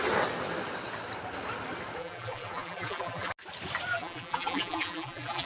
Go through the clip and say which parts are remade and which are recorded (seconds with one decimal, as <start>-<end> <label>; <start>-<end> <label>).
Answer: 0.0-2.0 recorded; 2.0-3.3 remade; 3.3-3.9 recorded; 3.9-5.5 remade